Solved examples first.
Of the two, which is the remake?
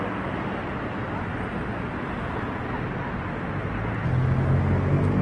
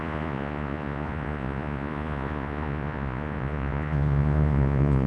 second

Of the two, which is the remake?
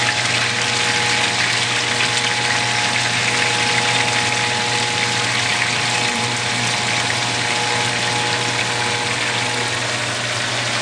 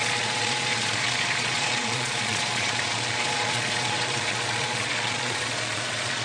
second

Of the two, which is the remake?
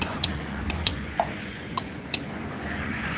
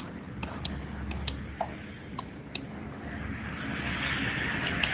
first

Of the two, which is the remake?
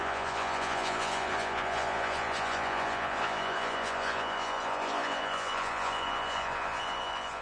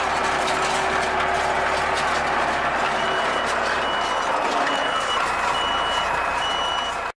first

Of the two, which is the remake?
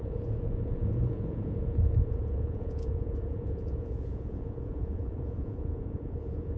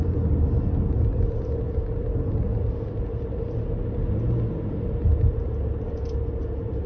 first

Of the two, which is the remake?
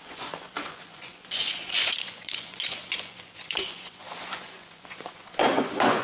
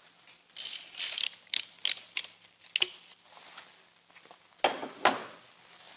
first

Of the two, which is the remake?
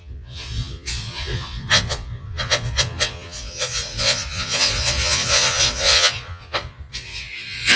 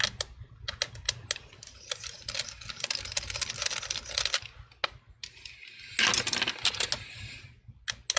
first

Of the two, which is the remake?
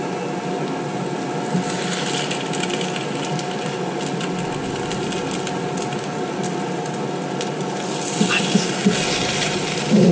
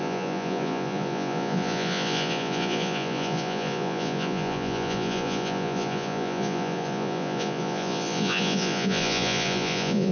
second